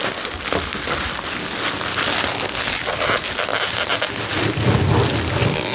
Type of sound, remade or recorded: recorded